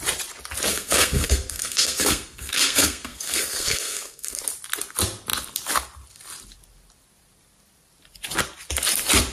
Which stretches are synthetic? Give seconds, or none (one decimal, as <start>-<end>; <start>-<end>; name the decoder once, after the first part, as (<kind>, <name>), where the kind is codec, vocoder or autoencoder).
0.7-4.4 (codec, SNAC)